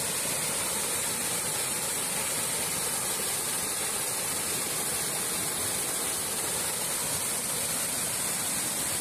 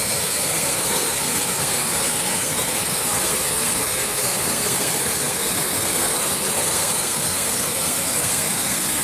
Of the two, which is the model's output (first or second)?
second